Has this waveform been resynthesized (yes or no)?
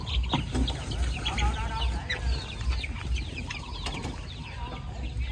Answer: no